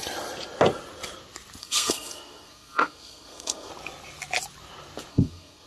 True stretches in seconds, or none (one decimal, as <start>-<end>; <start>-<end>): 0.0-1.6; 3.7-5.1